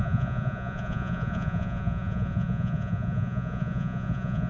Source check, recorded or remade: remade